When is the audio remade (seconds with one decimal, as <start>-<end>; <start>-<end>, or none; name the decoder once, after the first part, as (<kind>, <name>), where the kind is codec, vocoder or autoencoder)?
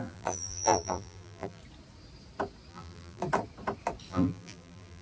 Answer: 0.0-1.6 (vocoder, BigVGAN v2); 2.7-3.2; 4.1-5.0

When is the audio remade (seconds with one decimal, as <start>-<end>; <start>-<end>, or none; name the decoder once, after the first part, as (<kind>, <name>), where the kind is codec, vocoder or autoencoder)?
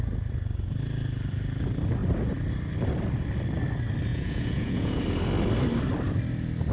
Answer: 4.1-5.0 (vocoder, Vocos)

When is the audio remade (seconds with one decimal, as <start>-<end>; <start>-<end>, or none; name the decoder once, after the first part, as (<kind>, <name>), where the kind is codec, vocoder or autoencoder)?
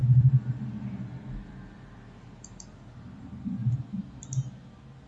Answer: none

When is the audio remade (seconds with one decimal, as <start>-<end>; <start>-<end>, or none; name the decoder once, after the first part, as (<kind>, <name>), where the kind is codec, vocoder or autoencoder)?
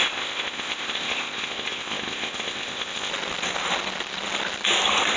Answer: 0.0-3.1 (codec, ZipCodec)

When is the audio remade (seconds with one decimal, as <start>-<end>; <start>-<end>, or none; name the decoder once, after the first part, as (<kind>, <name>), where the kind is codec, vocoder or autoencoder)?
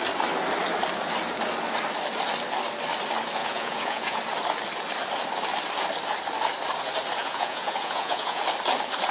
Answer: 3.4-4.2 (vocoder, Vocos); 7.2-8.4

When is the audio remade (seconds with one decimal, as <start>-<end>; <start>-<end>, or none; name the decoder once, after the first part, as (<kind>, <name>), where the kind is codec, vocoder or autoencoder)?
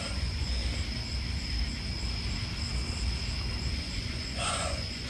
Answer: 0.0-0.6 (vocoder, Vocos); 3.7-5.1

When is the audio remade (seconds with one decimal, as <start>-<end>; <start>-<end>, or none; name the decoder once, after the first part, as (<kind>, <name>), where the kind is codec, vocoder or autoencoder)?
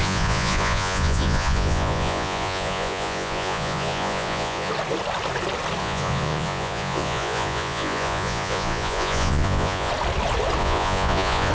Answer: 0.0-4.7 (vocoder, Vocos); 5.8-9.9; 10.6-11.5